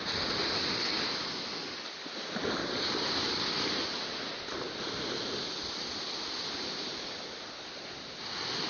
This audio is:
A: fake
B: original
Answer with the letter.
B